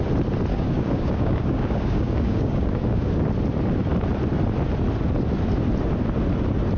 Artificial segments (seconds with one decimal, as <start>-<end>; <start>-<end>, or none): 0.5-3.1